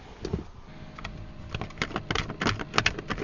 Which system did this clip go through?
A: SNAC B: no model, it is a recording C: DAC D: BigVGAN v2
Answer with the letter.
B